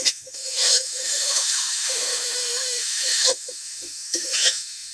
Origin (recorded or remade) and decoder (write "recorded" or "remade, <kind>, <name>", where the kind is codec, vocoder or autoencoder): remade, autoencoder, DAC-VAE